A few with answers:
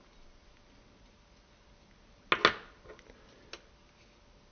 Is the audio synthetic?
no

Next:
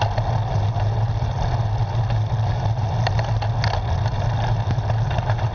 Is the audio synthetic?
no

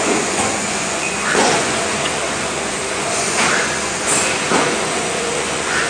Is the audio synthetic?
yes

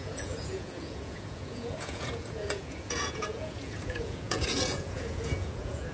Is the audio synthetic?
yes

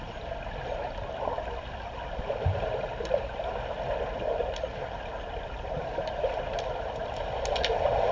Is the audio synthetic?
no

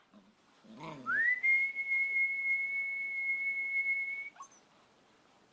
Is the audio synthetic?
no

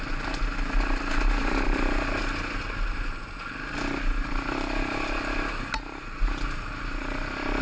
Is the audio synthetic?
no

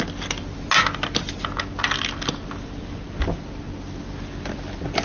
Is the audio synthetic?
no